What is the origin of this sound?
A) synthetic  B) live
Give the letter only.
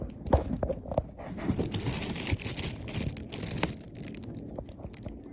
B